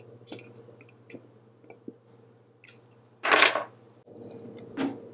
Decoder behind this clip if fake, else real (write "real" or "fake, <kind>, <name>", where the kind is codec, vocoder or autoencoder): real